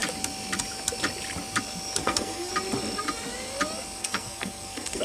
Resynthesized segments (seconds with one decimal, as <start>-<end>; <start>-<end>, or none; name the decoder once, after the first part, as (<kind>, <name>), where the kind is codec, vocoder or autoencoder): 2.0-2.5 (codec, SNAC); 4.0-5.0